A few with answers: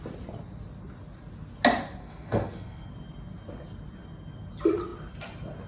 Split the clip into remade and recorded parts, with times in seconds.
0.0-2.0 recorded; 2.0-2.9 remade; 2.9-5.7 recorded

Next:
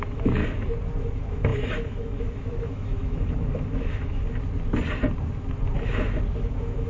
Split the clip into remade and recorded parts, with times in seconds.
0.0-0.4 remade; 0.4-1.0 recorded; 1.0-4.2 remade; 4.2-6.4 recorded; 6.4-6.9 remade

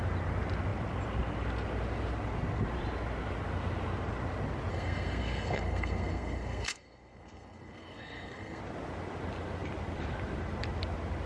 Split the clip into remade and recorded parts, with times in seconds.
0.0-4.7 recorded; 4.7-8.6 remade; 8.6-11.3 recorded

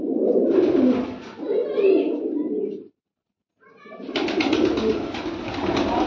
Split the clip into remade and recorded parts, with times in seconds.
0.0-6.1 recorded

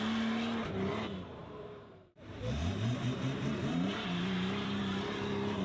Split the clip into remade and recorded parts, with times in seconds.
0.0-1.4 recorded; 1.4-4.8 remade; 4.8-5.6 recorded

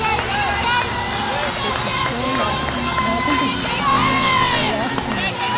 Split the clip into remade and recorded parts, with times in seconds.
0.0-3.9 recorded; 3.9-4.7 remade; 4.7-5.6 recorded